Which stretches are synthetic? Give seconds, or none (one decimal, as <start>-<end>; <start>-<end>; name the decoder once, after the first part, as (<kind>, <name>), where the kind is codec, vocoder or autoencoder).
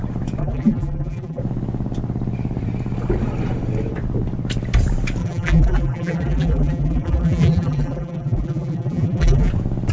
0.4-1.4 (vocoder, BigVGAN v2); 5.2-9.5